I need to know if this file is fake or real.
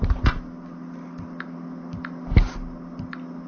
real